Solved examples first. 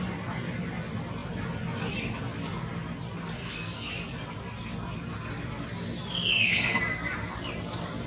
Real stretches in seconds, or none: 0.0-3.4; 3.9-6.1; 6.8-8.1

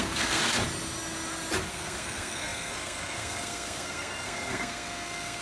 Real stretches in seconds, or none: 0.4-1.7

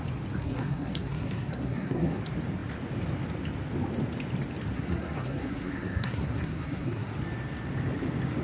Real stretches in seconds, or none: 0.0-0.4; 2.2-4.7; 7.1-8.4

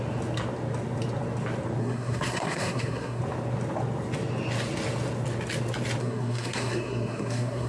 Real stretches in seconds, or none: 0.0-1.8; 3.2-6.0

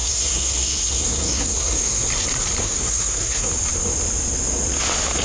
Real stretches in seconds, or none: 2.1-2.6; 3.5-5.2

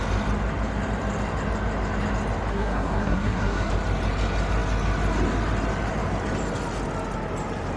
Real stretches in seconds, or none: 0.0-2.5; 3.7-7.8